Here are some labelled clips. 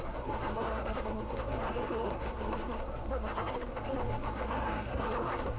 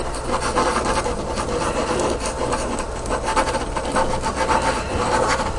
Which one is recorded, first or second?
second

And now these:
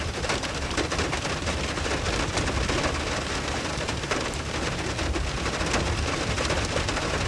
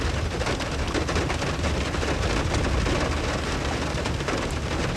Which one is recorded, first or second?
second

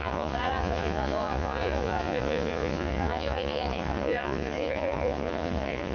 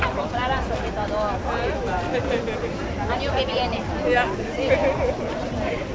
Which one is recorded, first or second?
second